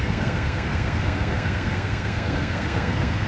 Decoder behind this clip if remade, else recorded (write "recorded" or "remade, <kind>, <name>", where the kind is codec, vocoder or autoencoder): remade, codec, SNAC